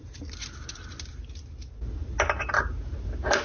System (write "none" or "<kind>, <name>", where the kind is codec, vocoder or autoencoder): none